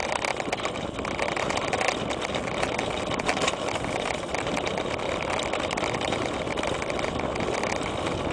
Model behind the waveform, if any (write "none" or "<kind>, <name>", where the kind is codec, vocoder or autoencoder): none